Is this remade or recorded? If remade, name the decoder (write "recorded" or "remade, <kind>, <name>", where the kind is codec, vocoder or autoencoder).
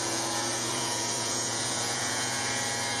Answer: remade, vocoder, Vocos